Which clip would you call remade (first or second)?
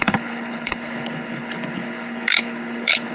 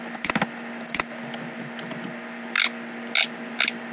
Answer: first